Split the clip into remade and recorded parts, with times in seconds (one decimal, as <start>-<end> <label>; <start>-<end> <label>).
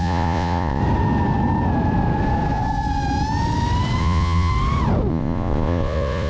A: 0.0-0.8 remade; 0.8-4.0 recorded; 4.0-4.5 remade; 4.5-5.1 recorded; 5.1-6.3 remade